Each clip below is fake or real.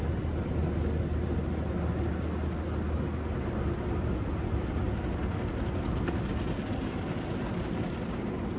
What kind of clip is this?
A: real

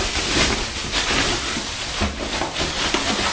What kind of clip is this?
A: real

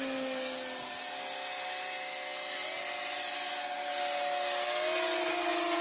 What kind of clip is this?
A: real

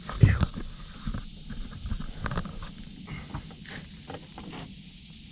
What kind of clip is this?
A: real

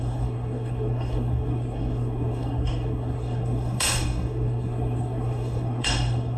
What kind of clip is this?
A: fake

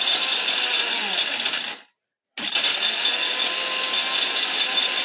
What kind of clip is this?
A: real